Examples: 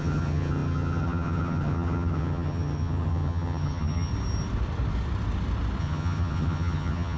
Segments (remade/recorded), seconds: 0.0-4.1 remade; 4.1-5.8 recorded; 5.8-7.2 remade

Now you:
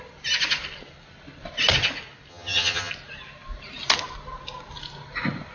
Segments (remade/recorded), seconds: 0.0-2.3 recorded; 2.3-2.9 remade; 2.9-5.5 recorded